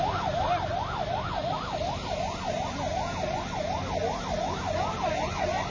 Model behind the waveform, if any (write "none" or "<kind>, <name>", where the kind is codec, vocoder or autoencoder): none